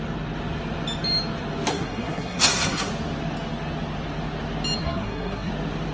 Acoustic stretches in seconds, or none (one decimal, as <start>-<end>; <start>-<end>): 0.0-1.7; 2.9-4.8; 5.5-5.9